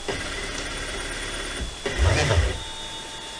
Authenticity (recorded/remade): recorded